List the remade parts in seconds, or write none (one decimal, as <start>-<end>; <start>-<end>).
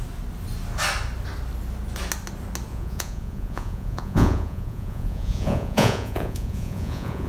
2.7-7.3